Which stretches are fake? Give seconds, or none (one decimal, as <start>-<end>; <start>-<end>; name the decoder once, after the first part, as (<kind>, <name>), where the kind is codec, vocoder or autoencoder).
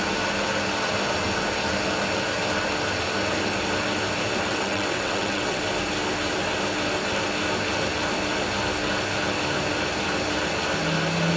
4.5-5.6 (vocoder, WaveNeXt)